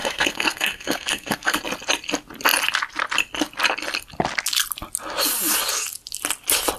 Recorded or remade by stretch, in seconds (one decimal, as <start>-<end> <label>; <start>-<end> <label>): 0.0-1.6 remade; 1.6-6.8 recorded